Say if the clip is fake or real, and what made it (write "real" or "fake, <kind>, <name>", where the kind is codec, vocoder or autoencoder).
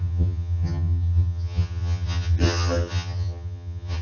fake, vocoder, HiFi-GAN